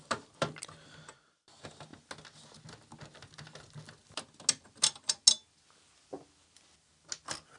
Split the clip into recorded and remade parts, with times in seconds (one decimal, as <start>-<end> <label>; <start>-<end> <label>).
0.0-7.6 recorded